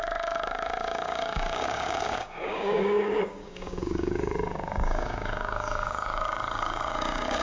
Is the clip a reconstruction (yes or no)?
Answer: yes